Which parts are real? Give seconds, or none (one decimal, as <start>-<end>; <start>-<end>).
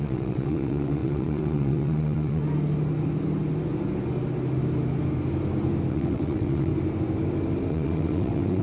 2.4-5.9; 6.7-7.7